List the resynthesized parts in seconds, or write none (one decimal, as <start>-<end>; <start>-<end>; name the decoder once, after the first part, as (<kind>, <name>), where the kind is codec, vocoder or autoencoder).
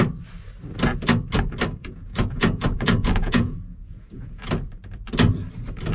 1.8-4.5 (vocoder, Vocos)